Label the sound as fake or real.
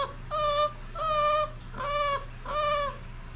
real